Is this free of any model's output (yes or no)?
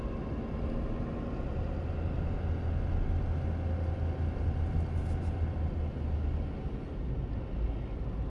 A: yes